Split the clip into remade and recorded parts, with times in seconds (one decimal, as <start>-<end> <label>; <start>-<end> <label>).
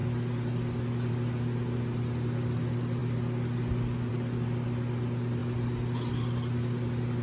0.0-7.2 recorded